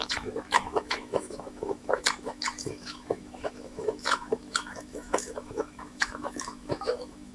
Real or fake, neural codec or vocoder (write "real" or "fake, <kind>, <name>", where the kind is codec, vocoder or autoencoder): fake, autoencoder, DAC-VAE